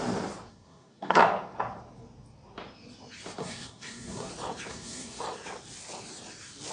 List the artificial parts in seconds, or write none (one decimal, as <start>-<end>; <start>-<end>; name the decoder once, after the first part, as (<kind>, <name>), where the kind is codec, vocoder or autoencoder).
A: 0.5-1.2 (codec, SNAC); 3.4-4.3; 4.7-5.2